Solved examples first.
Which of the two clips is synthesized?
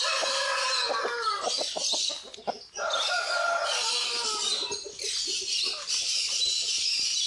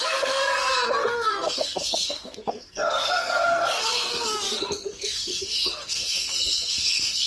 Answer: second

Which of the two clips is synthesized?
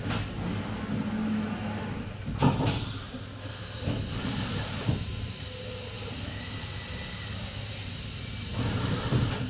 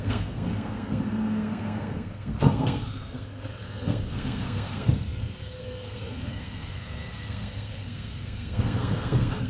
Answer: second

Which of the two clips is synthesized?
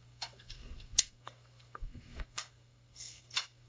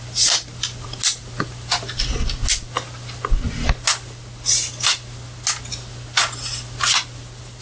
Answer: first